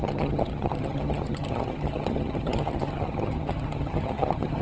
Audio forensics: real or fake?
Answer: fake